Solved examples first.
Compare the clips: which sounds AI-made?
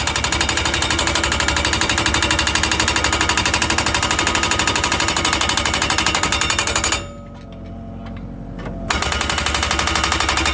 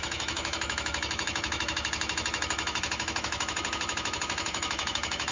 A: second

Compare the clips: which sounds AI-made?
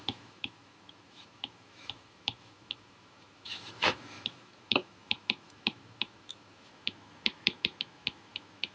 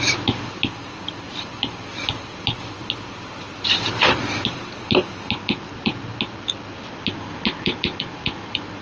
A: first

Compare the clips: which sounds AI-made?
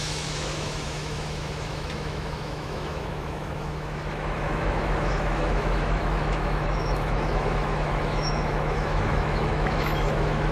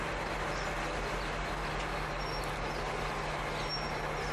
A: first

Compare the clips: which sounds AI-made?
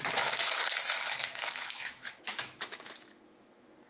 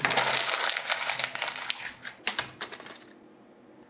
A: first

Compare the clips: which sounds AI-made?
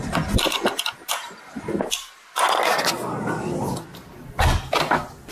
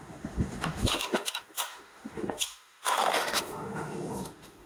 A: second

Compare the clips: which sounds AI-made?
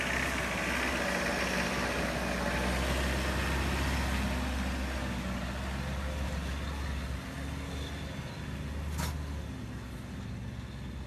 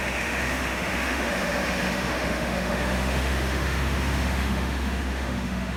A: second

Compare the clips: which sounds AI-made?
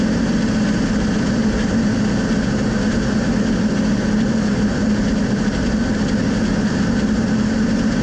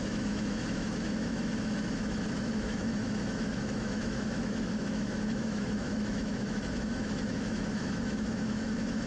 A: second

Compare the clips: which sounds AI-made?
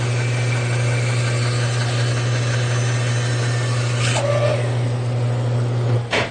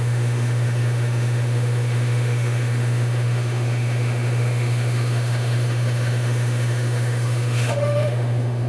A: second